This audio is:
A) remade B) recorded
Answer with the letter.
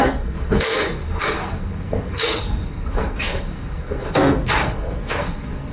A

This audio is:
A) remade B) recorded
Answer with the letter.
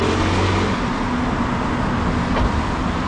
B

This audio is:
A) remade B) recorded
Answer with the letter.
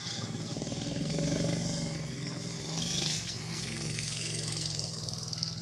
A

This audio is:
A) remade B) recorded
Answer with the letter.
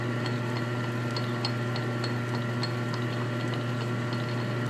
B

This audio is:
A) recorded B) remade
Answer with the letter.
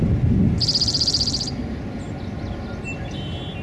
A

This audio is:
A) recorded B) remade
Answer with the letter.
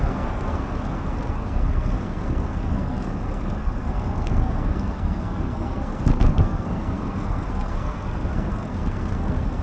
B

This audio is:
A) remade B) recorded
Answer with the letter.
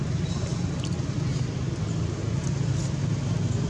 B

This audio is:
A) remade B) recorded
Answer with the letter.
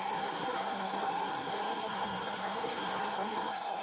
A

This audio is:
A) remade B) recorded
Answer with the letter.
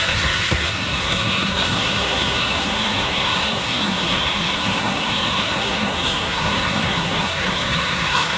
A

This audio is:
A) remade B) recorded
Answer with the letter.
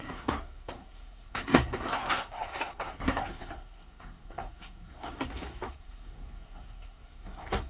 A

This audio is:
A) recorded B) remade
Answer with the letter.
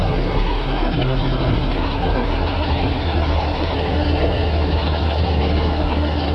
B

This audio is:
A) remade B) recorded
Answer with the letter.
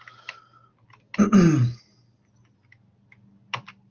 B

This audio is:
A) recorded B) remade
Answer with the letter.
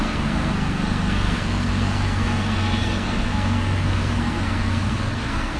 B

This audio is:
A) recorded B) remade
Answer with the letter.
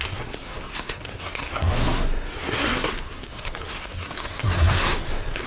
B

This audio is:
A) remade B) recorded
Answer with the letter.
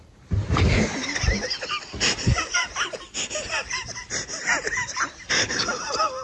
B